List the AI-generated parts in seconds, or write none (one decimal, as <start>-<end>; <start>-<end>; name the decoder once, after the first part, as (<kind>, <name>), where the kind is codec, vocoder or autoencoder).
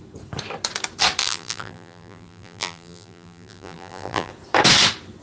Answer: 1.2-4.3 (vocoder, BigVGAN v2)